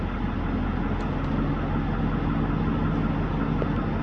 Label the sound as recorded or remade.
recorded